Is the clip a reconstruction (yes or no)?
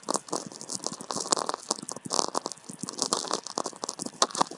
no